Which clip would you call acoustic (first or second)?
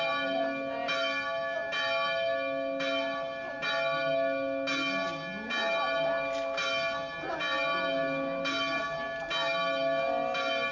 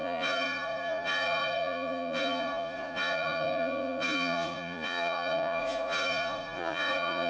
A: first